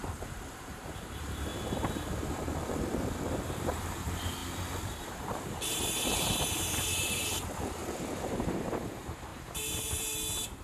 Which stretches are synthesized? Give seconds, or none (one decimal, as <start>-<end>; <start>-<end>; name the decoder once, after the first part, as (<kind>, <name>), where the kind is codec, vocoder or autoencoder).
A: 0.0-1.5 (vocoder, BigVGAN v2); 3.4-4.4; 5.0-10.6